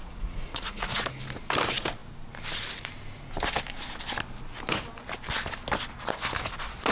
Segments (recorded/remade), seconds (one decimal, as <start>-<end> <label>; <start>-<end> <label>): 0.0-1.0 remade; 1.0-6.9 recorded